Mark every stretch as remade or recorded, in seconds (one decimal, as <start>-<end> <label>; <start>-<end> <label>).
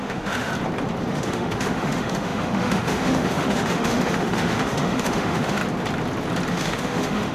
0.0-0.5 remade; 0.5-1.1 recorded; 1.1-5.6 remade; 5.6-6.5 recorded; 6.5-7.3 remade